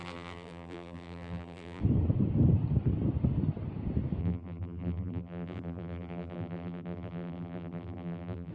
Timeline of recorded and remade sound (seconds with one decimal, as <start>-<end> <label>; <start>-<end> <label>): 0.0-1.8 remade; 1.8-4.2 recorded; 4.2-8.5 remade